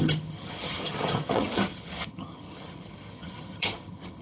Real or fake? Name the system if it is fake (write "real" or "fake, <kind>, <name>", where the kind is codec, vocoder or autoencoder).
fake, vocoder, HiFi-GAN